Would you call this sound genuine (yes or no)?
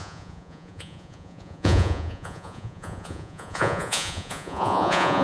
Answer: no